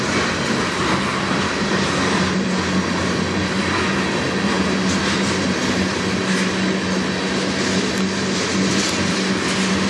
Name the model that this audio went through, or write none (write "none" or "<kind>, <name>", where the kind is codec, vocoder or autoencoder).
none